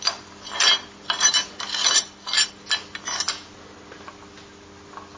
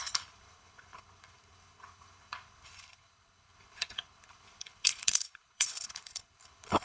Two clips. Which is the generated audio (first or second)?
second